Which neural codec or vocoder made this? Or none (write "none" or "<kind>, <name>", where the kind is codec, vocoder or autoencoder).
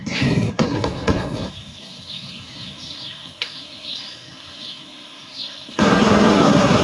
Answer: codec, SNAC